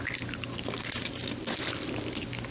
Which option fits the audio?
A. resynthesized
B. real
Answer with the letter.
B